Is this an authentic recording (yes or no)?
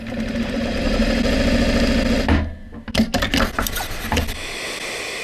yes